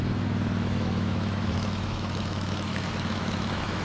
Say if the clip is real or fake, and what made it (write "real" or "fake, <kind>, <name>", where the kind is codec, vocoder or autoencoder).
fake, autoencoder, DAC-VAE